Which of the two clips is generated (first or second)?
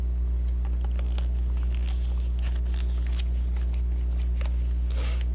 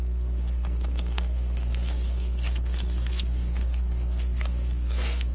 second